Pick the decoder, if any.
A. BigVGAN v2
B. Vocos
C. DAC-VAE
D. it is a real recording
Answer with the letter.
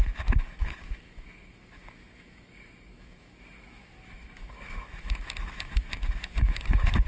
C